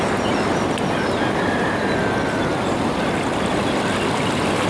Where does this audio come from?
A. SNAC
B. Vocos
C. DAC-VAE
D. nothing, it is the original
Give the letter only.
D